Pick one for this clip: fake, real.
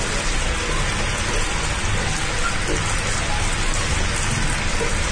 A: real